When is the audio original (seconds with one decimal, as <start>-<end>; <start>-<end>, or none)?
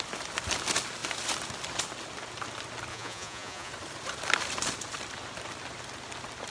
0.0-2.9; 3.7-6.5